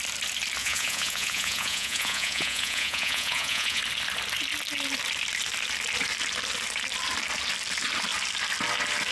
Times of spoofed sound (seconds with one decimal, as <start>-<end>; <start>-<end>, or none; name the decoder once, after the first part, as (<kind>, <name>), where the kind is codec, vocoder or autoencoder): 0.6-3.8 (vocoder, Vocos)